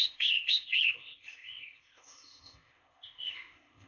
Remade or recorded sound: remade